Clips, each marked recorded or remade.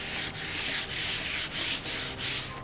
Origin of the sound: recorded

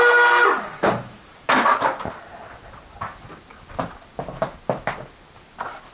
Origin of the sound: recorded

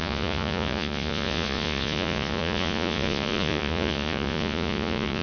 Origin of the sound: remade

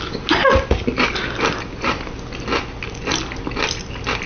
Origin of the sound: recorded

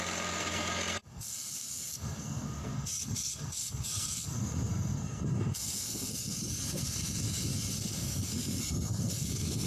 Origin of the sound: remade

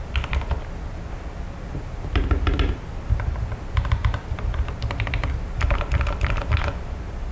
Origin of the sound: recorded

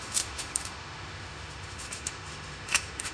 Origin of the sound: remade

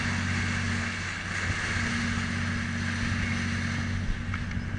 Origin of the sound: recorded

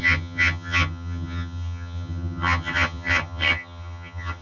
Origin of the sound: remade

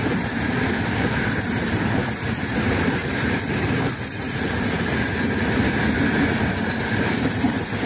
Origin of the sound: remade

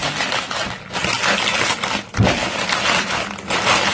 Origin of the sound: recorded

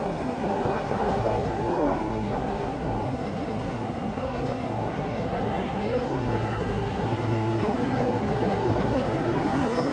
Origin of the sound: remade